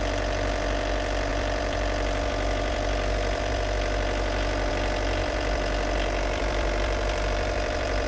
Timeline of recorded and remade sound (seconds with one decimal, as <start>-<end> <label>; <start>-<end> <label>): 0.0-1.3 recorded; 1.3-4.7 remade; 4.7-5.2 recorded; 5.2-8.1 remade